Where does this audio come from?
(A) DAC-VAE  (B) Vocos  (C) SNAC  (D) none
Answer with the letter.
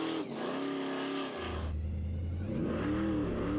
D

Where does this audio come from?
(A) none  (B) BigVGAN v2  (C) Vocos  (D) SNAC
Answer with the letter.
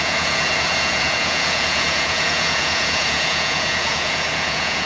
C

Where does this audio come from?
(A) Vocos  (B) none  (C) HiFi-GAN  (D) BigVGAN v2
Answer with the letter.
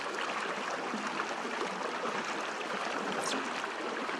B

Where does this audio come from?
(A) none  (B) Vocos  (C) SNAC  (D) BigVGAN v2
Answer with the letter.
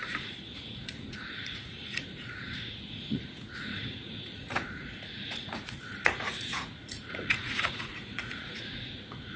B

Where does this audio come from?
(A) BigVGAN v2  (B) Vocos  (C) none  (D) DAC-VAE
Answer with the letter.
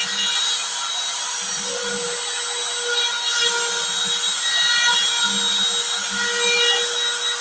C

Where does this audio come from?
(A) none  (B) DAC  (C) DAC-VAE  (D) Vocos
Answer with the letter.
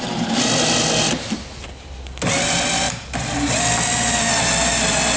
A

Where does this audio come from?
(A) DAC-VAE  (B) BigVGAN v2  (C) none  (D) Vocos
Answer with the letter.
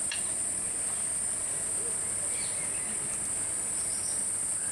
C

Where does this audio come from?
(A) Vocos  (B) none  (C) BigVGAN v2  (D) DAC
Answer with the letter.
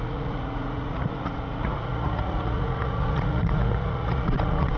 A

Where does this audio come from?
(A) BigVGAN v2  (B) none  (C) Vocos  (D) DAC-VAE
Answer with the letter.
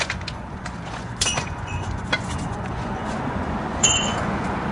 C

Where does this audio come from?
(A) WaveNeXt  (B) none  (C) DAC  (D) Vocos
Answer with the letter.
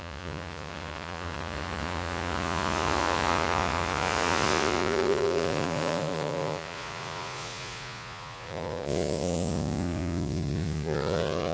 D